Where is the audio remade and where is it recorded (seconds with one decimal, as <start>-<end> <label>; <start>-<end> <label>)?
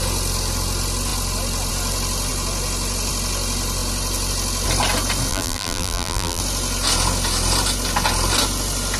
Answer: 0.0-5.3 recorded; 5.3-6.4 remade; 6.4-9.0 recorded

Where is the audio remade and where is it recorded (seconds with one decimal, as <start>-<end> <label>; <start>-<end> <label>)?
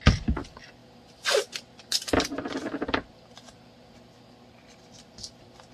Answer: 0.0-5.7 recorded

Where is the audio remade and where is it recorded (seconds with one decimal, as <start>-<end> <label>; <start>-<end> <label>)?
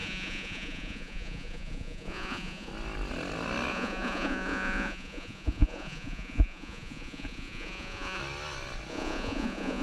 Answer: 0.0-2.7 remade; 2.7-3.7 recorded; 3.7-8.2 remade; 8.2-8.9 recorded; 8.9-9.8 remade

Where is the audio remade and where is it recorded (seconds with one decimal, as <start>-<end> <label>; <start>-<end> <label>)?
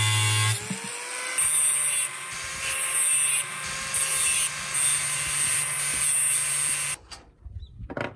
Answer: 0.0-8.2 recorded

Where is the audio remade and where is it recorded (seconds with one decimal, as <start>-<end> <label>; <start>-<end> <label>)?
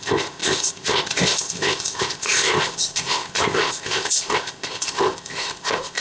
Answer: 0.0-6.0 remade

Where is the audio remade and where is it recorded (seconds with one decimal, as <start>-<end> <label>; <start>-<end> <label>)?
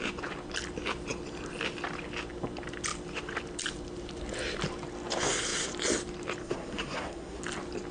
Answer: 0.0-6.4 recorded; 6.4-7.4 remade; 7.4-7.9 recorded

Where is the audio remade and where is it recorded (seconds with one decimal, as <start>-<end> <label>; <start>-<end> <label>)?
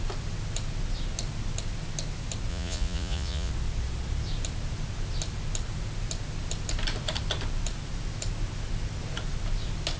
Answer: 0.0-2.5 recorded; 2.5-3.5 remade; 3.5-10.0 recorded